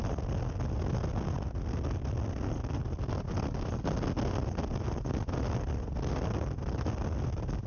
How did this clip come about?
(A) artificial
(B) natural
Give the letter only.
B